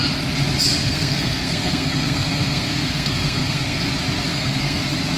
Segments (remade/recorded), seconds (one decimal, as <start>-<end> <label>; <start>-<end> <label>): 0.0-0.8 recorded; 0.8-3.9 remade; 3.9-4.3 recorded; 4.3-4.8 remade; 4.8-5.2 recorded